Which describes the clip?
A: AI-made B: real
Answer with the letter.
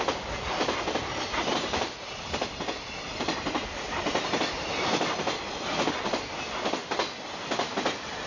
B